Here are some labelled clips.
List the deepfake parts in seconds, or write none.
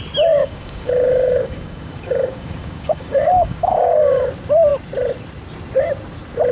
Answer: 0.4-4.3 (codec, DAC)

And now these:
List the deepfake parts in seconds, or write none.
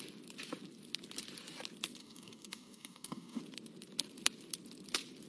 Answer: 2.0-3.4 (codec, DAC)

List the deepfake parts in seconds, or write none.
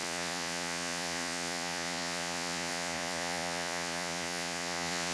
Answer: 0.0-5.1 (vocoder, Vocos)